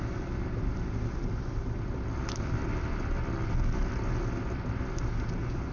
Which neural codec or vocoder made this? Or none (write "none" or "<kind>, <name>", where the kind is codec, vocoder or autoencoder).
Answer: none